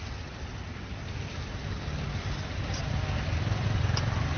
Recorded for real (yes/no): yes